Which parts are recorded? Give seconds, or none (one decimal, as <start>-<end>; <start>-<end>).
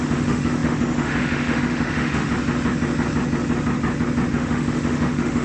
2.3-4.3